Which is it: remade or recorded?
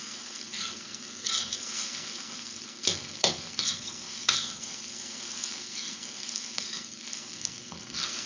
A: remade